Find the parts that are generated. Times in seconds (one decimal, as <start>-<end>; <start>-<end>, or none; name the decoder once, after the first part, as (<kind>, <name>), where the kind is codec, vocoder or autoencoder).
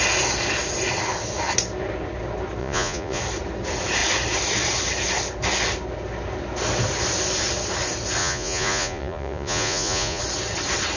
2.6-3.2 (vocoder, Vocos); 8.2-10.2